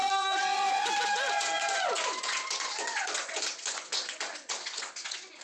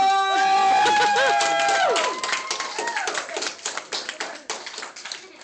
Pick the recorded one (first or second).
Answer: second